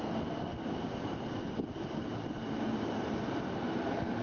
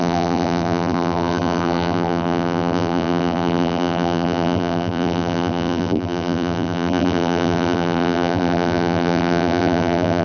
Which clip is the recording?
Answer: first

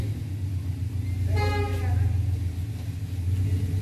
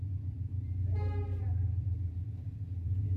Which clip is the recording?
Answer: first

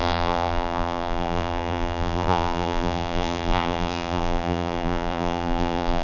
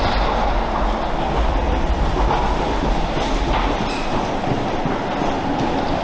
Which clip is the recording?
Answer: second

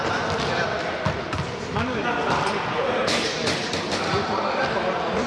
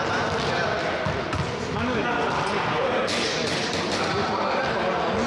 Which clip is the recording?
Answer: second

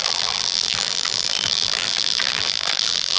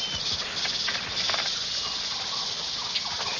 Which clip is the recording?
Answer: second